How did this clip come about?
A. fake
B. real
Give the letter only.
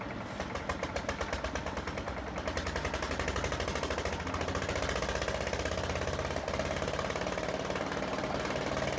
B